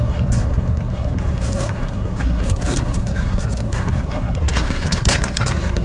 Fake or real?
fake